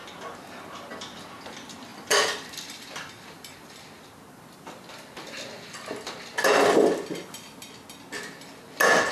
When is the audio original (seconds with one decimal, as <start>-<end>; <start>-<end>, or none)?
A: 0.0-1.9; 3.7-9.1